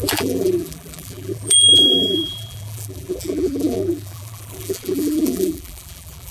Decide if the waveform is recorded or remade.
remade